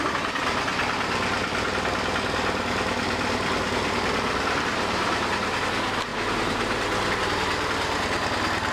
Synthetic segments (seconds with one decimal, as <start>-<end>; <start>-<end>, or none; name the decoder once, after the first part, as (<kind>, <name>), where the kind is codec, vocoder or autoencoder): none